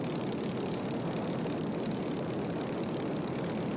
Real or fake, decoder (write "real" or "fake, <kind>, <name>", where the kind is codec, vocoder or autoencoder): real